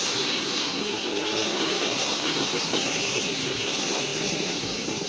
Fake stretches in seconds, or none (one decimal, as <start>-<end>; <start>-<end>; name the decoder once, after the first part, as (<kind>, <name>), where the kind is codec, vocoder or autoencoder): 0.0-5.1 (codec, SNAC)